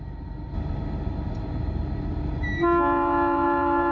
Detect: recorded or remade remade